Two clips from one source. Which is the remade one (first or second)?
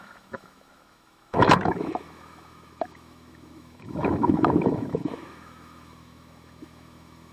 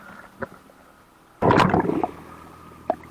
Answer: first